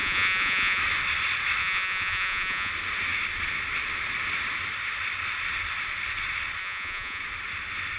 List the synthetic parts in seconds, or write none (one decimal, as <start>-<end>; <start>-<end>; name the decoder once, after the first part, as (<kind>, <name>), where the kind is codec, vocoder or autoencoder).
0.0-0.8 (vocoder, Vocos); 1.6-2.7; 6.6-7.2